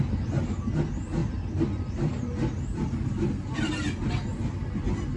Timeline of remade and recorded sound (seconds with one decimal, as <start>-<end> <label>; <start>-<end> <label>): 0.0-5.2 recorded